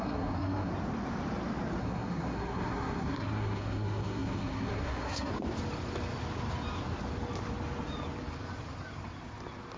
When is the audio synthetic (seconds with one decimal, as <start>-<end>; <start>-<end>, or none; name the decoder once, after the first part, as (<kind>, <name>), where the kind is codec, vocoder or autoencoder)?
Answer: 0.0-0.7 (codec, SNAC); 1.8-5.3